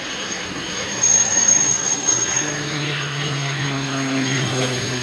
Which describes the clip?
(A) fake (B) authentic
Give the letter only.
A